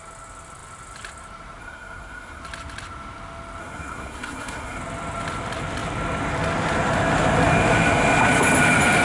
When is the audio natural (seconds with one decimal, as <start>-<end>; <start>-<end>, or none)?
0.0-1.6; 2.4-3.6; 4.8-9.0